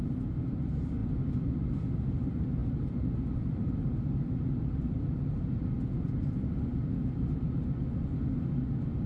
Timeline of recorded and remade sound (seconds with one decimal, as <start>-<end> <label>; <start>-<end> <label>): 0.0-9.1 recorded